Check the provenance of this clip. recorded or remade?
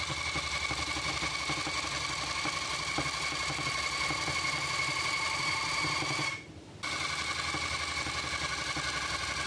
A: recorded